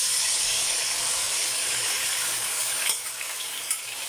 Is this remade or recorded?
remade